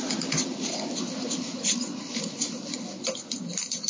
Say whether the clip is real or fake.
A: real